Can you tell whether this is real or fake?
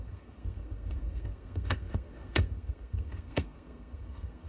fake